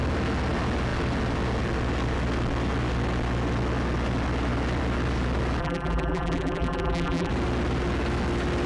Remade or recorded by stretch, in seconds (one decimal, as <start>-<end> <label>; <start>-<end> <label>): 0.0-5.6 recorded; 5.6-7.3 remade; 7.3-8.7 recorded

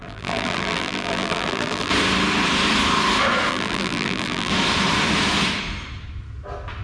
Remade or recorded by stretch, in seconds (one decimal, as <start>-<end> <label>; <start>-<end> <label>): 0.0-1.9 remade; 1.9-3.5 recorded; 3.5-4.5 remade; 4.5-6.8 recorded

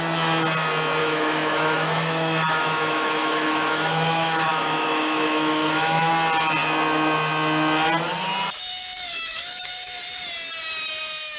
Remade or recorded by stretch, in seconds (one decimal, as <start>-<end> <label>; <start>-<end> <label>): 0.0-1.0 recorded; 1.0-6.1 remade; 6.1-8.7 recorded; 8.7-10.0 remade; 10.0-11.4 recorded

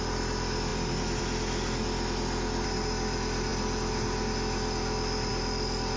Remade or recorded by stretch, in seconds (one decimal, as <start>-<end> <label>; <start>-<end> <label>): 0.0-6.0 recorded

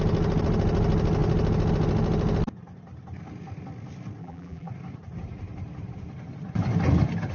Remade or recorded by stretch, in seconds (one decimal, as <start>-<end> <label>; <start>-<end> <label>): 0.0-4.2 recorded; 4.2-4.7 remade; 4.7-7.3 recorded

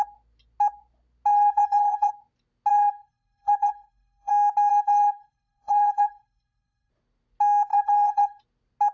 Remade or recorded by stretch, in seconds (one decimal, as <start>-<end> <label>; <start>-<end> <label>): 0.0-1.3 recorded; 1.3-2.1 remade; 2.1-2.7 recorded; 2.7-4.3 remade; 4.3-4.7 recorded; 4.7-6.9 remade; 6.9-7.7 recorded; 7.7-8.4 remade; 8.4-8.9 recorded